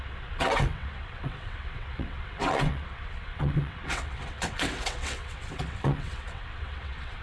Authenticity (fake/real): fake